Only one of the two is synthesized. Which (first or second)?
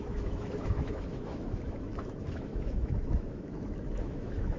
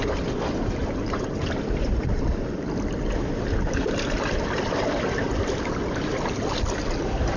first